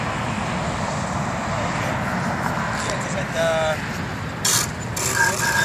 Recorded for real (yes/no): yes